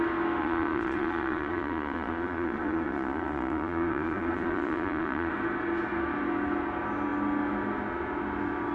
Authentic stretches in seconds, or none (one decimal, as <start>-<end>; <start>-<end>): 0.0-0.4; 5.3-8.7